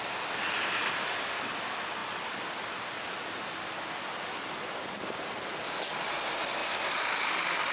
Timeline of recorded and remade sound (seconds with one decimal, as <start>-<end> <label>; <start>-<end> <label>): 0.0-7.7 recorded